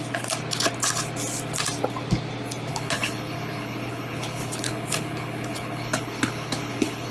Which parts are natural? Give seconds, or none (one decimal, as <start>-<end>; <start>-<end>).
0.0-2.7